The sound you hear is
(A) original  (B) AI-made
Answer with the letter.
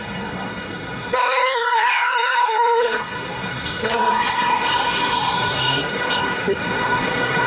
B